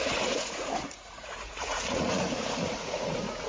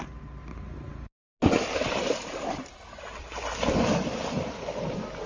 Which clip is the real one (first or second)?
second